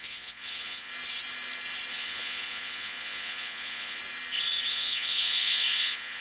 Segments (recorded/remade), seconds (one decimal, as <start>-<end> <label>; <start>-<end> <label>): 0.0-0.9 remade; 0.9-1.9 recorded; 1.9-4.0 remade; 4.0-4.7 recorded; 4.7-6.2 remade